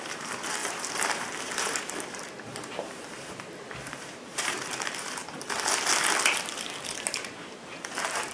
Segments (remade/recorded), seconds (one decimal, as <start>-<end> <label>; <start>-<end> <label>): 0.0-5.2 remade; 5.2-6.9 recorded; 6.9-8.3 remade